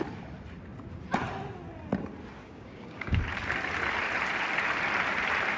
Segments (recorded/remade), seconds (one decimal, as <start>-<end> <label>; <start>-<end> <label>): 0.0-2.4 recorded; 2.4-3.2 remade; 3.2-5.6 recorded